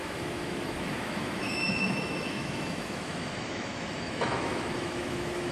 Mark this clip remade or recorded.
remade